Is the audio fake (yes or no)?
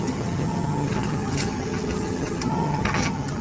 yes